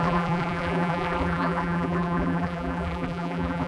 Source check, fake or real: fake